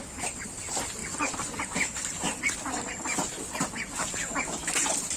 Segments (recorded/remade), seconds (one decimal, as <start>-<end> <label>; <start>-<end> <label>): 0.0-5.2 recorded